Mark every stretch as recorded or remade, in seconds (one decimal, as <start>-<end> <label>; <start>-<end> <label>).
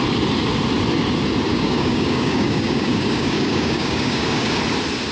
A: 0.0-1.5 recorded; 1.5-4.6 remade; 4.6-5.1 recorded